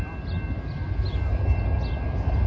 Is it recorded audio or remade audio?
recorded